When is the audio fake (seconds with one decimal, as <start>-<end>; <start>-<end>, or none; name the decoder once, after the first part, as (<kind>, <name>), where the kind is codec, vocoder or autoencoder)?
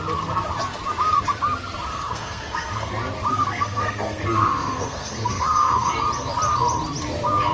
1.9-2.9 (codec, SNAC); 3.3-5.9